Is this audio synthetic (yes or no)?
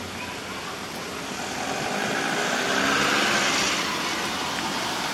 no